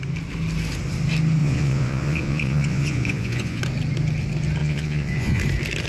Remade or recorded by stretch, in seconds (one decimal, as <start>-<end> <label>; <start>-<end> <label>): 0.0-1.4 recorded; 1.4-3.6 remade; 3.6-4.6 recorded; 4.6-5.4 remade; 5.4-5.9 recorded